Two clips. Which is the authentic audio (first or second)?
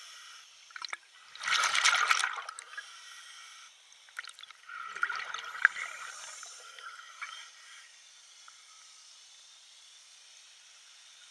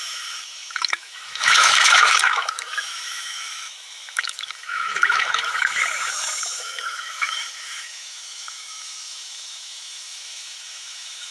first